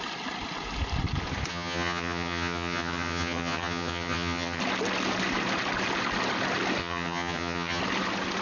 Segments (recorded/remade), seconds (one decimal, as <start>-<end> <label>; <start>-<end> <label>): 0.0-1.5 recorded; 1.5-4.6 remade; 4.6-6.8 recorded; 6.8-7.8 remade; 7.8-8.4 recorded